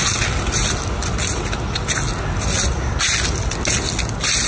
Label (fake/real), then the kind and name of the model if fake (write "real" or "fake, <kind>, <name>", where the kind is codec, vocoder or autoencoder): real